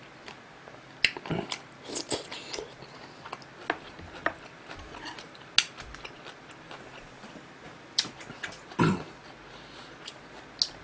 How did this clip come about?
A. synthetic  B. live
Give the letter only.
B